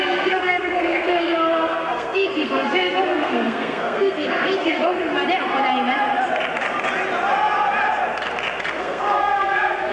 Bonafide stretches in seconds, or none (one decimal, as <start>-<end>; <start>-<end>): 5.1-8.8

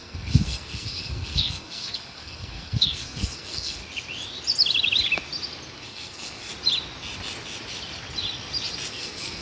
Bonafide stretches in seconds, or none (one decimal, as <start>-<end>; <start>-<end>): 3.8-5.8; 6.5-8.9

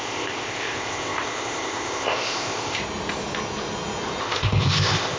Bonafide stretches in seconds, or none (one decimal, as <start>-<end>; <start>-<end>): 2.8-4.2